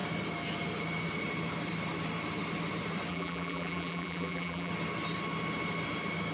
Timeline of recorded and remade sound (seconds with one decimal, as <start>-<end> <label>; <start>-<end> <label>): 0.0-3.1 recorded; 3.1-4.7 remade; 4.7-6.3 recorded